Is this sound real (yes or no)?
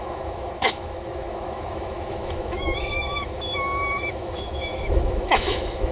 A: no